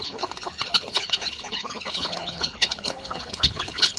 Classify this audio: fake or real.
fake